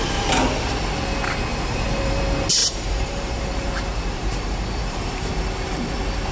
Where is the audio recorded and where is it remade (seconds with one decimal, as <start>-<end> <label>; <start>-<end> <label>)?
0.0-1.5 recorded; 1.5-2.2 remade; 2.2-2.6 recorded; 2.6-5.3 remade; 5.3-6.3 recorded